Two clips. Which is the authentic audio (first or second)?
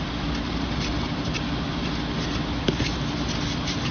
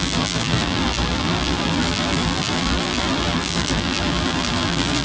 first